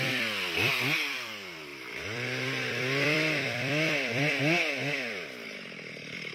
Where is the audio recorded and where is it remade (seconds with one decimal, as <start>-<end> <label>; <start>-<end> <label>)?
0.0-6.3 remade